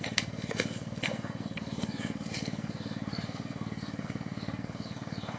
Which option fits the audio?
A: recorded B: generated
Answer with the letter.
B